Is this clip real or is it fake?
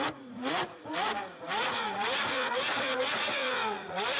fake